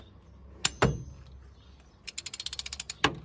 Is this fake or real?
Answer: real